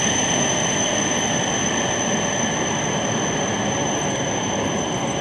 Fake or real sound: real